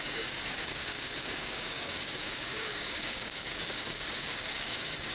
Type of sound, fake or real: fake